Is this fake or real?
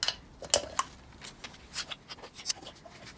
real